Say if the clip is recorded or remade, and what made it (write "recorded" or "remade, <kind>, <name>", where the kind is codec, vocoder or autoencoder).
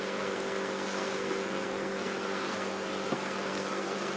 remade, codec, SNAC